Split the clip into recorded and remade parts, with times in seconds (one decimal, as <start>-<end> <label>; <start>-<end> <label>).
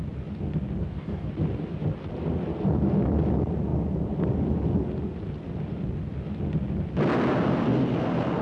0.0-0.8 recorded; 0.8-1.3 remade; 1.3-8.4 recorded